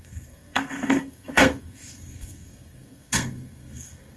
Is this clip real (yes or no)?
no